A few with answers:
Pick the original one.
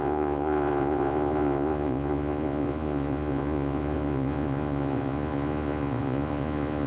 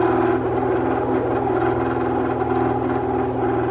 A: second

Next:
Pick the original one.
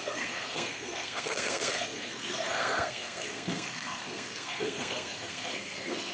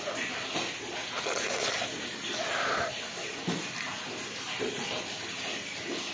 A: second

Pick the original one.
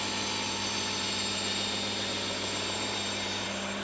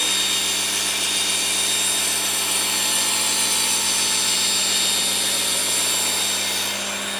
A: second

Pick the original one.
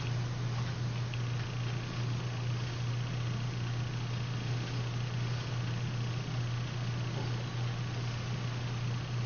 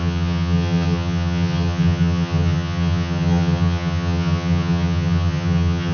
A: first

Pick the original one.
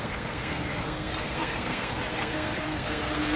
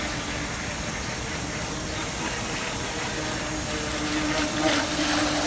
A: second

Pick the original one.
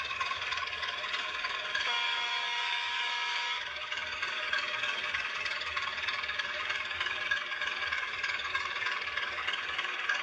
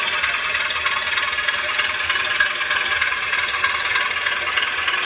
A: second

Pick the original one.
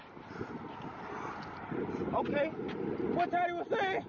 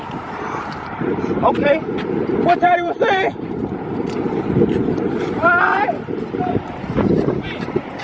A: first